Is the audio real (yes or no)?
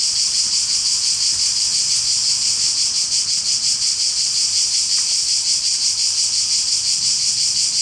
yes